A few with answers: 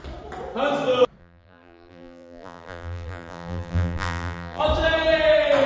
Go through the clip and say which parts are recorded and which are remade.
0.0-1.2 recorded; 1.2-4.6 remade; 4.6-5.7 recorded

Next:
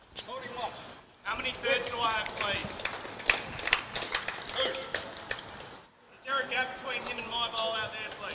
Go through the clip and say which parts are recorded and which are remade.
0.0-2.6 recorded; 2.6-3.8 remade; 3.8-8.3 recorded

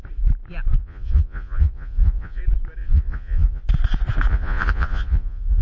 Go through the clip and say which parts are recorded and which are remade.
0.0-0.8 recorded; 0.8-2.4 remade; 2.4-2.8 recorded; 2.8-3.6 remade; 3.6-4.3 recorded; 4.3-5.6 remade

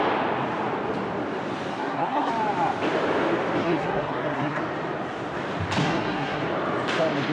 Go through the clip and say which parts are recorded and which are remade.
0.0-1.7 recorded; 1.7-2.3 remade; 2.3-3.6 recorded; 3.6-4.6 remade; 4.6-5.8 recorded; 5.8-6.4 remade; 6.4-7.3 recorded

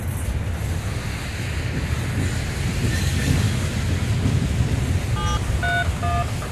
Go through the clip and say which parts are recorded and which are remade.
0.0-3.0 recorded; 3.0-3.7 remade; 3.7-6.5 recorded

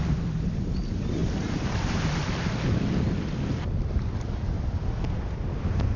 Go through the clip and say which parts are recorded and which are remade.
0.0-6.0 recorded